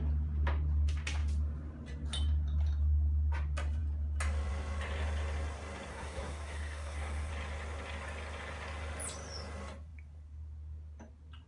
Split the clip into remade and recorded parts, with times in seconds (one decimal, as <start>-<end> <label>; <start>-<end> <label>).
0.0-5.9 recorded; 5.9-7.3 remade; 7.3-11.5 recorded